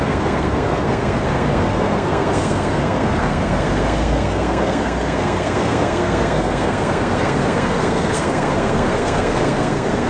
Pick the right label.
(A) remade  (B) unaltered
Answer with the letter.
A